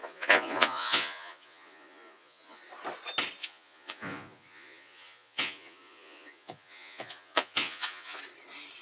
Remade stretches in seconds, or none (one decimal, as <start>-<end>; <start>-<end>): 0.0-2.6; 3.4-8.2